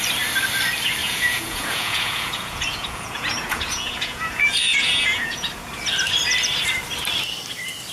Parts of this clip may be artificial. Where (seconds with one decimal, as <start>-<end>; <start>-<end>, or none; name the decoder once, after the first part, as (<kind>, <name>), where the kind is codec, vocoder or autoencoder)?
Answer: 1.0-5.5 (vocoder, Vocos)